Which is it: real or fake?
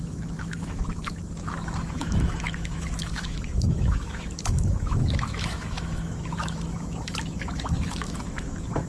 fake